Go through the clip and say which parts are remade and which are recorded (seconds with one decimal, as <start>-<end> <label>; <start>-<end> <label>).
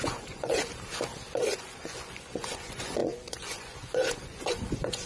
0.0-0.7 remade; 0.7-1.6 recorded; 1.6-5.1 remade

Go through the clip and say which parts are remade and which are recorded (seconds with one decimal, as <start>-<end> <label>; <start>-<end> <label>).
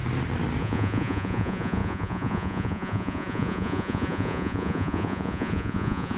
0.0-0.6 recorded; 0.6-6.2 remade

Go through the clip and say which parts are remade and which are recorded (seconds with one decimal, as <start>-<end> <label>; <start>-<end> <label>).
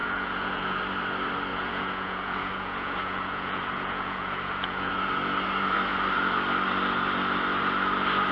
0.0-0.8 remade; 0.8-1.5 recorded; 1.5-4.9 remade; 4.9-8.3 recorded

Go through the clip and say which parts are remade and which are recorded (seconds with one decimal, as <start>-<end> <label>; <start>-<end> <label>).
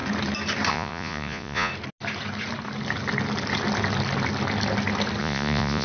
0.0-0.7 recorded; 0.7-1.7 remade; 1.7-5.2 recorded; 5.2-5.8 remade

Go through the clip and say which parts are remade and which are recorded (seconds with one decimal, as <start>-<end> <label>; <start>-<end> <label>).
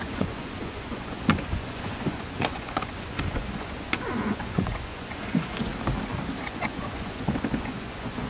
0.0-5.7 remade; 5.7-6.4 recorded; 6.4-8.3 remade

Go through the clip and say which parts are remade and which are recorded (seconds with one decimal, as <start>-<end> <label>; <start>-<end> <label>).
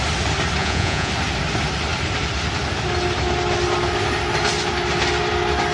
0.0-0.6 recorded; 0.6-1.1 remade; 1.1-5.7 recorded